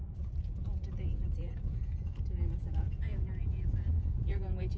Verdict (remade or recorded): remade